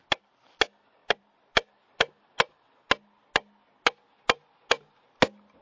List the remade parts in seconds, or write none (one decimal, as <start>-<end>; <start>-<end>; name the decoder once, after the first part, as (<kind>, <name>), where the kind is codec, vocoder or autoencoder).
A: 1.0-2.1 (vocoder, BigVGAN v2)